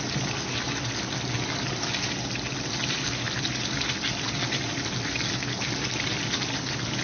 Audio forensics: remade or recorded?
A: recorded